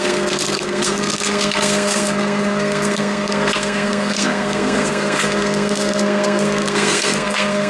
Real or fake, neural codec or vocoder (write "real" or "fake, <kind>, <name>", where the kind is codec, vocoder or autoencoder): fake, codec, SNAC